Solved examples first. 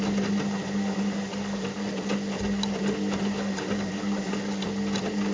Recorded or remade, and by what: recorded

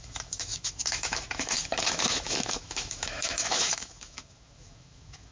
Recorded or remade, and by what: remade, autoencoder, DAC-VAE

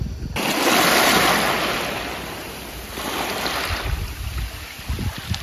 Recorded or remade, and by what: recorded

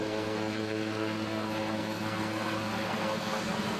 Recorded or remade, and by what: remade, codec, SNAC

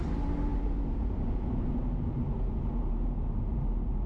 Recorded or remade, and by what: recorded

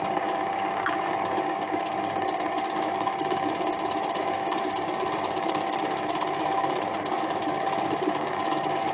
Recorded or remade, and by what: remade, codec, DAC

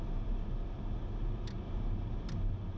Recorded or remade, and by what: recorded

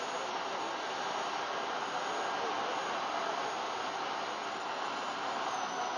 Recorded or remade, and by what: recorded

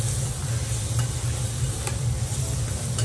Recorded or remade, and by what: recorded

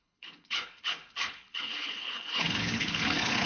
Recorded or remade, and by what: remade, codec, HILCodec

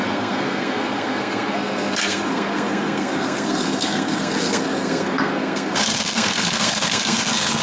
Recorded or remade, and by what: remade, codec, SNAC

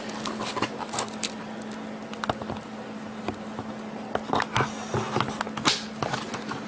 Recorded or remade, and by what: recorded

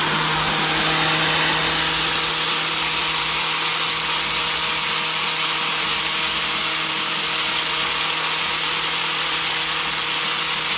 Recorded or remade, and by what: recorded